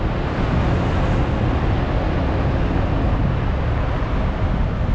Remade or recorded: recorded